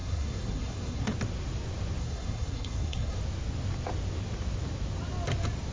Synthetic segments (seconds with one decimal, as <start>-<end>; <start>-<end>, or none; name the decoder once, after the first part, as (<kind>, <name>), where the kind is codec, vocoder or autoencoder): 0.0-1.1 (codec, SNAC); 2.0-3.2